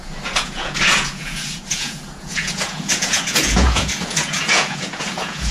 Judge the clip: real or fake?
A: fake